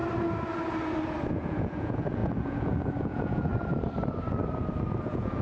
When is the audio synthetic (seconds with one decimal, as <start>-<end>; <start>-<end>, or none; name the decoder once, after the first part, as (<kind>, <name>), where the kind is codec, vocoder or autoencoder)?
1.3-3.5 (vocoder, Vocos); 5.0-5.4